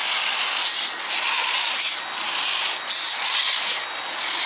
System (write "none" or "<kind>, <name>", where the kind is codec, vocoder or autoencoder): none